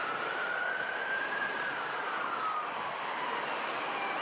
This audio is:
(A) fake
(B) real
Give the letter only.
A